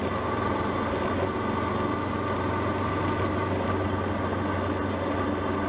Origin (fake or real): real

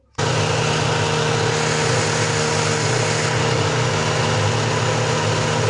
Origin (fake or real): real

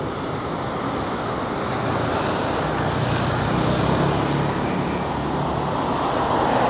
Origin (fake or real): real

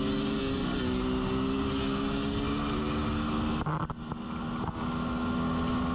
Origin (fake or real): real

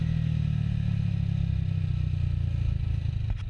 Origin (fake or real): real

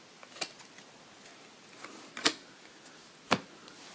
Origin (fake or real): real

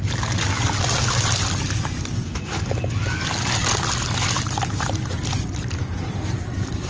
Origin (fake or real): real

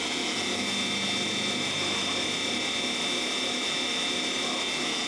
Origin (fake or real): real